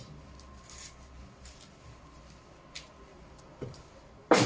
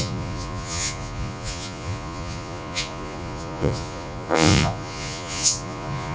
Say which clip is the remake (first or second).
second